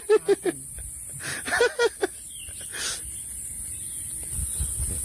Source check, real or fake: real